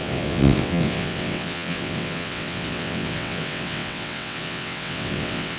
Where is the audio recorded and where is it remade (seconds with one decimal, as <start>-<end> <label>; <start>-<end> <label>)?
0.0-5.6 remade